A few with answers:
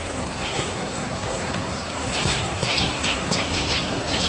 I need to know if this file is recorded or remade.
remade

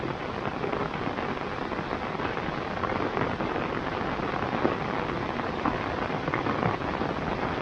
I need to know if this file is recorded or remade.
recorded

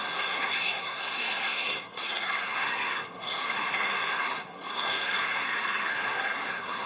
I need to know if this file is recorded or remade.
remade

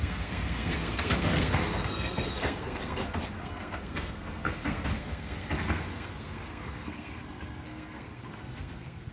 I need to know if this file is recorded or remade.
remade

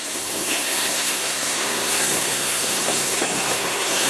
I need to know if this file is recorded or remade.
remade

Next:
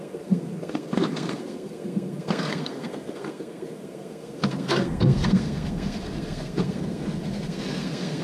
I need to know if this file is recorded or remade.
remade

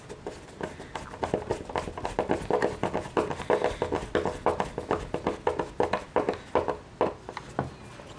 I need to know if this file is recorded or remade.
recorded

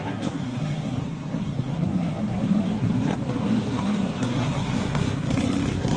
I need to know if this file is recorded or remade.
remade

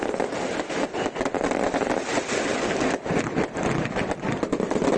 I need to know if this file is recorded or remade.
recorded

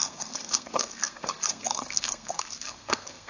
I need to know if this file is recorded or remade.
remade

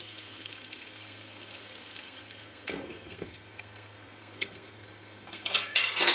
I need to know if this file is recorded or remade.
remade